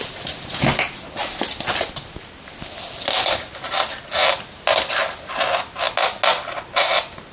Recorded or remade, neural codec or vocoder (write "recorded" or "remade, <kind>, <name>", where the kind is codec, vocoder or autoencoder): recorded